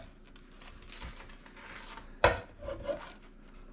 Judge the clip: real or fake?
real